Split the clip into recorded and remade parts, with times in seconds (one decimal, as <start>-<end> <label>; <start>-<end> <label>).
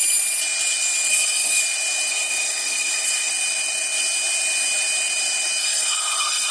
0.0-1.1 recorded; 1.1-1.6 remade; 1.6-2.1 recorded; 2.1-3.3 remade; 3.3-5.6 recorded; 5.6-6.5 remade